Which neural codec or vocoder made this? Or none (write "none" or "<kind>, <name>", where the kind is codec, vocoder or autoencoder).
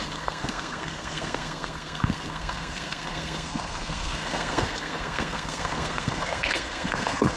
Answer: codec, SNAC